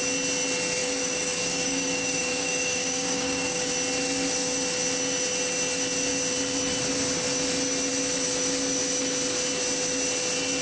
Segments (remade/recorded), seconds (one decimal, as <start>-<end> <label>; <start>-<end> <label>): 0.0-0.8 recorded; 0.8-3.7 remade; 3.7-10.6 recorded